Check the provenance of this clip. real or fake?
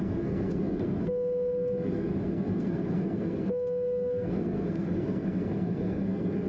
fake